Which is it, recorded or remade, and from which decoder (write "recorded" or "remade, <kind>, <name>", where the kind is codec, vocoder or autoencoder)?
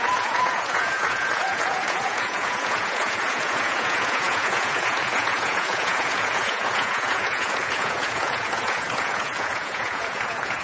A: remade, vocoder, Vocos